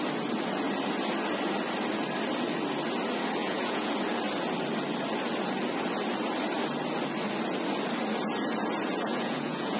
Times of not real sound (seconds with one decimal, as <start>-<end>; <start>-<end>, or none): 3.4-3.9; 9.1-9.8